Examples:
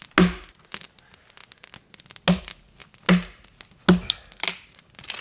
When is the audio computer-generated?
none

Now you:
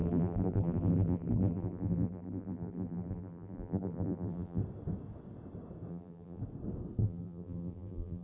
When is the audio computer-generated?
0.0-4.6 (vocoder, BigVGAN v2); 5.9-6.4; 7.0-8.2

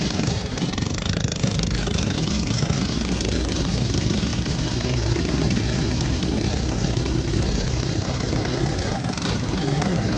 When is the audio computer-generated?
0.0-10.2 (codec, SNAC)

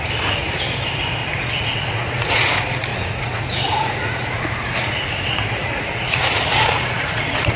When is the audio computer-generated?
1.2-2.4 (vocoder, Vocos); 2.9-7.6

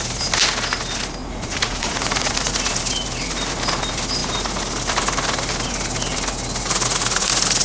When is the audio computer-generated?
1.2-2.5 (vocoder, Vocos)

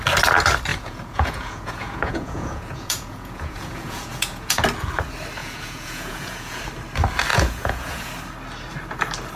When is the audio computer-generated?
0.7-4.6 (vocoder, Vocos); 5.4-6.6; 7.3-8.1

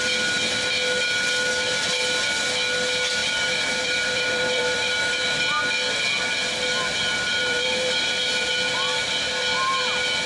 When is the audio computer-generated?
3.2-5.2 (vocoder, BigVGAN v2); 7.3-8.1

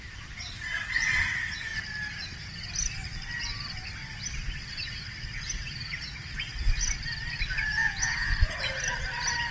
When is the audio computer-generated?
7.8-8.3 (vocoder, Vocos)